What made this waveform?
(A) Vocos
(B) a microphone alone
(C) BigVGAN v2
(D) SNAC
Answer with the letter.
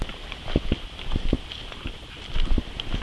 B